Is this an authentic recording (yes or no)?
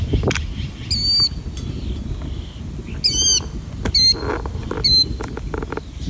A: yes